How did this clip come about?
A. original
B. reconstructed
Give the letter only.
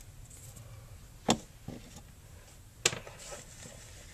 A